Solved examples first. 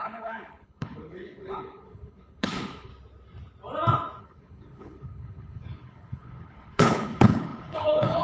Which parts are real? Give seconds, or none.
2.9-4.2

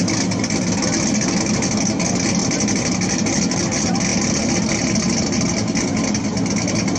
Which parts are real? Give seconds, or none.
0.0-7.0